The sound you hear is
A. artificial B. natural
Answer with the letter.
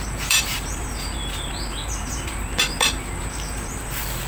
A